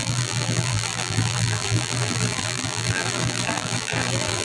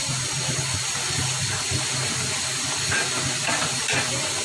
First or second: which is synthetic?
first